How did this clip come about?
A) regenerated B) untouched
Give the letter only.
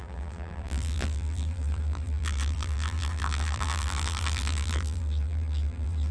A